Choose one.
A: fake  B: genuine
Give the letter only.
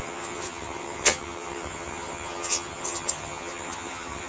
A